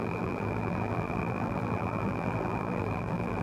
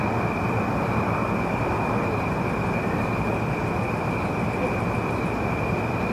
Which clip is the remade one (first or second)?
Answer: first